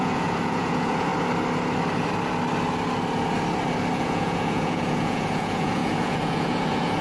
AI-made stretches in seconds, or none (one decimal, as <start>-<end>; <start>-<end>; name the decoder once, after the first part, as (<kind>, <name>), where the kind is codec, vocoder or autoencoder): 0.0-1.1 (vocoder, Vocos); 3.9-7.0